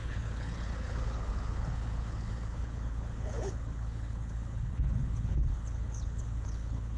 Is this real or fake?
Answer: fake